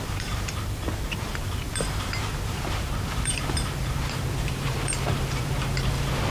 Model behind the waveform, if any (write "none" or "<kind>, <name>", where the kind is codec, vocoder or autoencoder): vocoder, BigVGAN v2